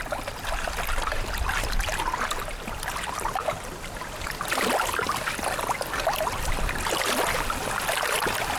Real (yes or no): yes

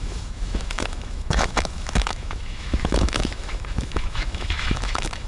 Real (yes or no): no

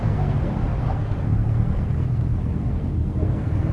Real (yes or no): no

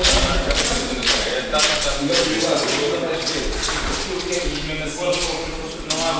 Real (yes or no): yes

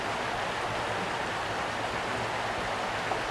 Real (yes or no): yes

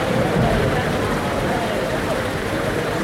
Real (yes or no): no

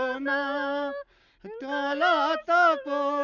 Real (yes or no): yes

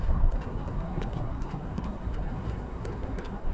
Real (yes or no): no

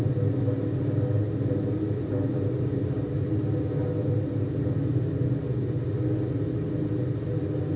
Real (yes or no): yes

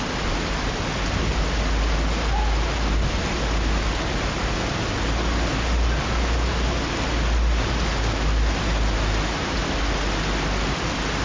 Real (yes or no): yes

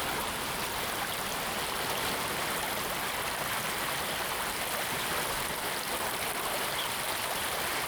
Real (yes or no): yes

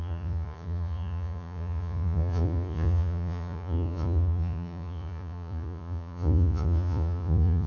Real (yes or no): no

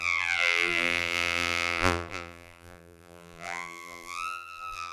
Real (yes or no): no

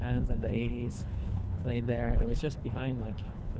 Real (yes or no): no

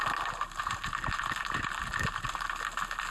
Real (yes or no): yes